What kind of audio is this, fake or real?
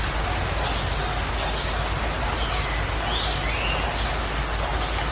real